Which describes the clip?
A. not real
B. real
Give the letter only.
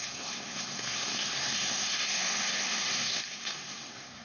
A